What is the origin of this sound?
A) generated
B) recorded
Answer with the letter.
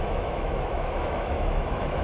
A